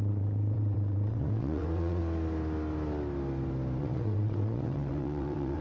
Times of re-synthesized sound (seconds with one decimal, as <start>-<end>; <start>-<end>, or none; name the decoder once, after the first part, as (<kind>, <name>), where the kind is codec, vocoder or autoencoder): 0.0-2.0 (vocoder, WaveNeXt); 3.8-5.6